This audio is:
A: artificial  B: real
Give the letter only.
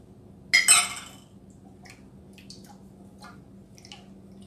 B